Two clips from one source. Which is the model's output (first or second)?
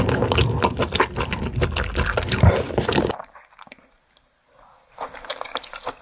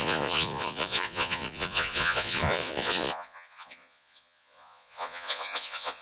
second